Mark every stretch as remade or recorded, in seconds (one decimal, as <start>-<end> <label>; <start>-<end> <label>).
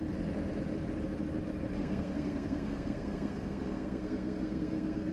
0.0-1.8 recorded; 1.8-5.1 remade